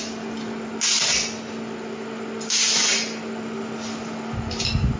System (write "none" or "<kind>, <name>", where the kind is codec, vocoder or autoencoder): none